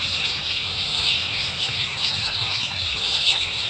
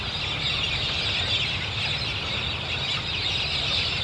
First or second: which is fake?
first